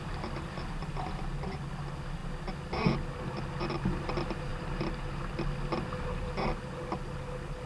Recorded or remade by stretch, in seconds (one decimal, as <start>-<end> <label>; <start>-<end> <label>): 0.0-7.7 recorded